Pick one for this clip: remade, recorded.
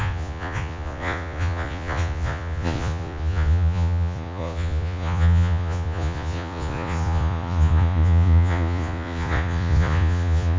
remade